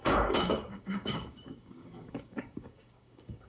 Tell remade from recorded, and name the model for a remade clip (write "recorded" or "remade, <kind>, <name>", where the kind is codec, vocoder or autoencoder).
remade, codec, DAC